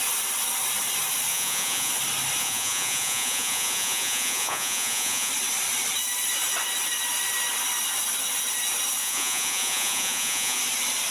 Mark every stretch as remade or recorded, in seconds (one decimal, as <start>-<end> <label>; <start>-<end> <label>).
0.0-1.3 recorded; 1.3-1.9 remade; 1.9-2.4 recorded; 2.4-5.3 remade; 5.3-9.0 recorded; 9.0-10.6 remade; 10.6-11.1 recorded